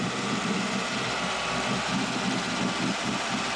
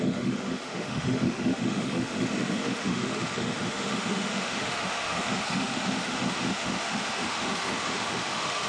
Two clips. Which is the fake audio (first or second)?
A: second